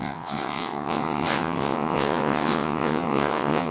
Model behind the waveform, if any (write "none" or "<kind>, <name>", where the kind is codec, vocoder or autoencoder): vocoder, WaveNeXt